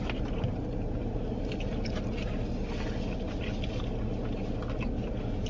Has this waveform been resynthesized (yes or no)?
no